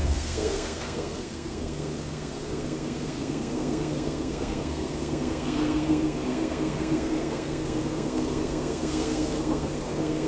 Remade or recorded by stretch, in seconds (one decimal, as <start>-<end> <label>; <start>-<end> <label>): 0.0-10.3 remade